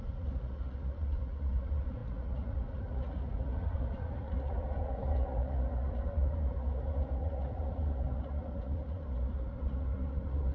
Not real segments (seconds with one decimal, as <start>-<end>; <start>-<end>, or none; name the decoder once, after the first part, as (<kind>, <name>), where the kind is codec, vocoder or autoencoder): 0.0-10.5 (vocoder, Vocos)